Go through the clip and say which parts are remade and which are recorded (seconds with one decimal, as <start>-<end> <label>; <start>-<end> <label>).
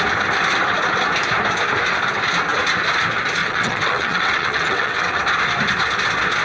0.0-3.4 recorded; 3.4-5.2 remade; 5.2-6.4 recorded